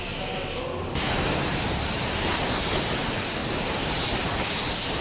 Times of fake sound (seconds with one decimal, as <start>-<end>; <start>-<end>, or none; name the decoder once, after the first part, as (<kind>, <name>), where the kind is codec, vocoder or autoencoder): none